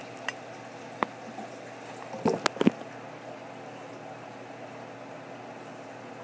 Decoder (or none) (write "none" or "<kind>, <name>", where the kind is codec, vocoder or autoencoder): none